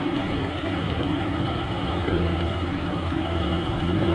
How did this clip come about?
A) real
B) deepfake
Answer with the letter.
B